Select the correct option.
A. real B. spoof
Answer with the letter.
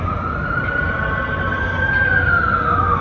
A